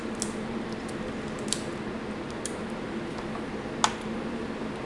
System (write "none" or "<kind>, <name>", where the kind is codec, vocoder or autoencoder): none